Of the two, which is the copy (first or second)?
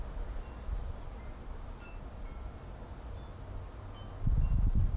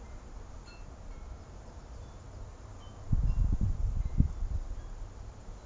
second